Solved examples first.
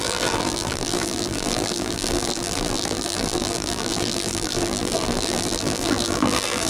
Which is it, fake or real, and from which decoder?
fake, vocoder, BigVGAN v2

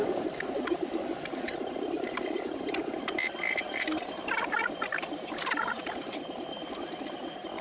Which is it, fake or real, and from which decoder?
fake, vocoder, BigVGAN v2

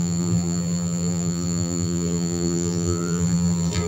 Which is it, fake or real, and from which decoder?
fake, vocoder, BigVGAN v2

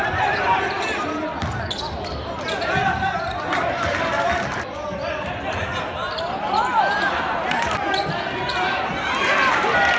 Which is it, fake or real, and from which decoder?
real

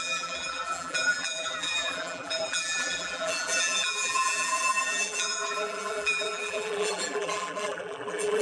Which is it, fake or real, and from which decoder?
fake, vocoder, BigVGAN v2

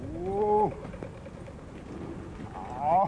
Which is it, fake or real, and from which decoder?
real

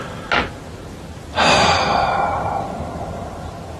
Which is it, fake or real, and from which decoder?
real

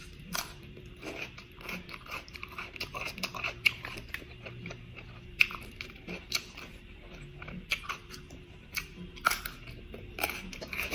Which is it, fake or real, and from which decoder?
fake, vocoder, BigVGAN v2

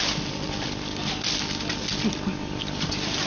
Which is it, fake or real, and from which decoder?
real